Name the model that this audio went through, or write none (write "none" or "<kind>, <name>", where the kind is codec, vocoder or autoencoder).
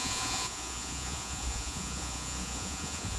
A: vocoder, Vocos